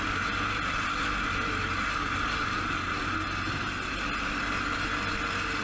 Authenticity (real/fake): real